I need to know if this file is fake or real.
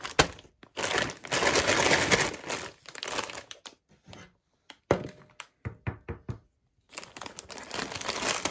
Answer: real